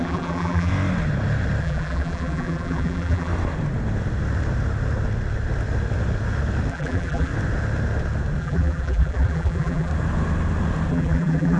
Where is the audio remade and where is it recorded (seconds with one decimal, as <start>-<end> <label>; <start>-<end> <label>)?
0.0-0.7 remade; 0.7-1.6 recorded; 1.6-3.3 remade; 3.3-6.7 recorded; 6.7-7.3 remade; 7.3-8.4 recorded; 8.4-9.9 remade; 9.9-10.9 recorded; 10.9-11.6 remade